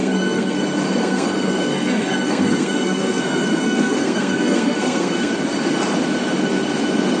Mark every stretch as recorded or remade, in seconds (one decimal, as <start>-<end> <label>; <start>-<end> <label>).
0.0-0.6 remade; 0.6-1.0 recorded; 1.0-5.3 remade; 5.3-7.2 recorded